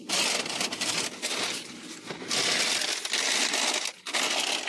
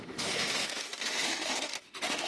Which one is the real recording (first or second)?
first